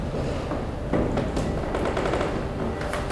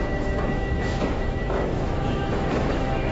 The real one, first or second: first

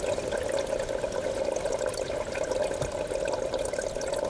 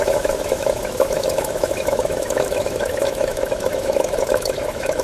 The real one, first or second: first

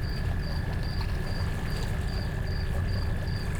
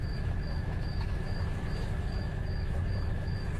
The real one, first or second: first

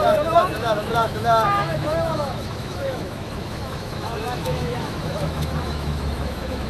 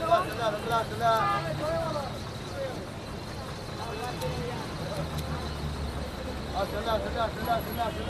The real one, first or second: second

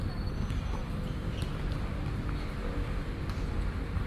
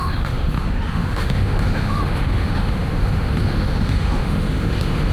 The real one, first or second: first